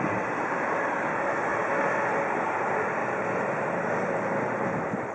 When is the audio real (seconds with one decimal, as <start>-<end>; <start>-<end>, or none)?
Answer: 0.0-5.1